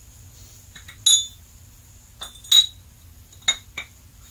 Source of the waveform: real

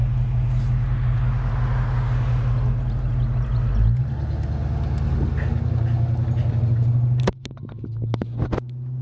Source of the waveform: real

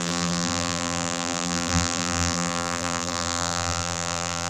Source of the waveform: fake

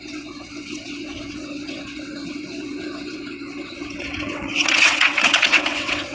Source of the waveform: fake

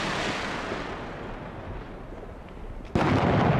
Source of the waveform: real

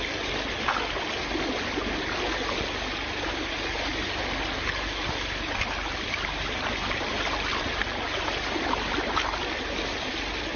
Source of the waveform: real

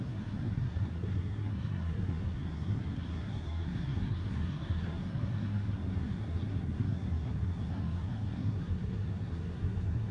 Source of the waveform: fake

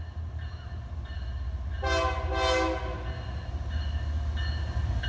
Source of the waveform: real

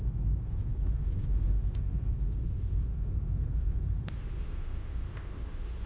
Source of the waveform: fake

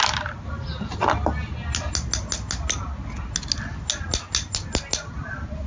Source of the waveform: real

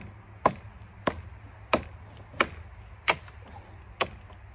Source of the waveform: real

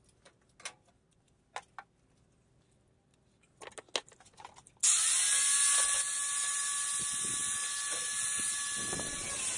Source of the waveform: real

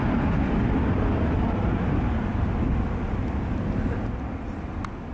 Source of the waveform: real